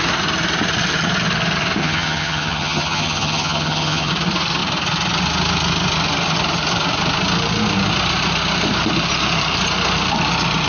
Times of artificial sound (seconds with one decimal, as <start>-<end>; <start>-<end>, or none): 1.8-4.1